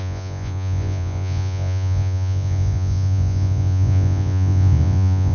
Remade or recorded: remade